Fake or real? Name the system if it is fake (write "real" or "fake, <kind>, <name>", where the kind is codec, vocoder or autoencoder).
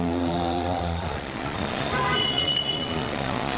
fake, vocoder, Vocos